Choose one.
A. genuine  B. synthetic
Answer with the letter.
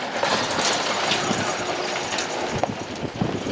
A